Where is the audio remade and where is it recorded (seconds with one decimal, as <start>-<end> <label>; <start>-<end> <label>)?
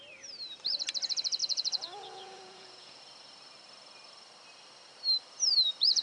0.0-1.4 recorded; 1.4-3.0 remade; 3.0-6.0 recorded